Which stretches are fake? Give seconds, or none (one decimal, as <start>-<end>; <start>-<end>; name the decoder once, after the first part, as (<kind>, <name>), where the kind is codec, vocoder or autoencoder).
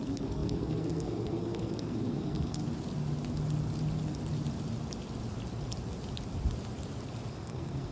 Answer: 0.0-2.6 (codec, SNAC); 7.3-7.9